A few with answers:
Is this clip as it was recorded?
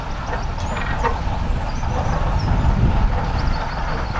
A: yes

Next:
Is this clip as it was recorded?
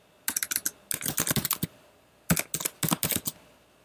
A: yes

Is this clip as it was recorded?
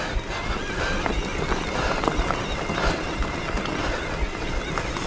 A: yes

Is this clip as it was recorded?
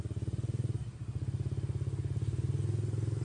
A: yes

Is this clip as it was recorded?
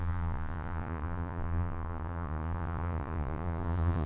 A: no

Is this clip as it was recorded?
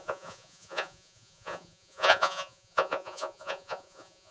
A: no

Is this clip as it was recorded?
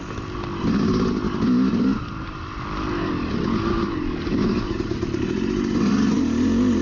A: yes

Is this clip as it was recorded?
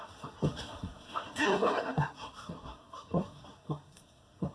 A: no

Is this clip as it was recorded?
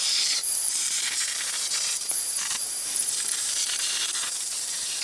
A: no